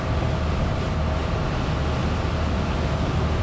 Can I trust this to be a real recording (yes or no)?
yes